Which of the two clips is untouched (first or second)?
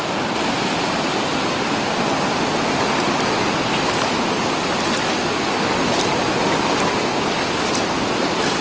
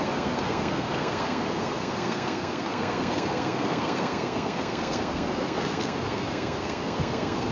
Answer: first